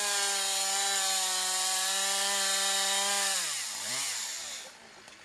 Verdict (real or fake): fake